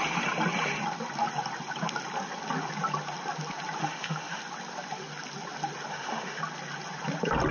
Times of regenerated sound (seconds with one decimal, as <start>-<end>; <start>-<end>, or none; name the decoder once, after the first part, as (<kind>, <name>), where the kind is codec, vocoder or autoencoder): 3.8-4.4 (autoencoder, DAC-VAE); 5.9-6.4